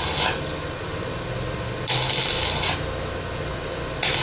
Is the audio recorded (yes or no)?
yes